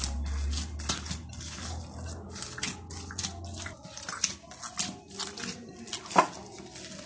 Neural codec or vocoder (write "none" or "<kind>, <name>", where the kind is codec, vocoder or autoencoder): none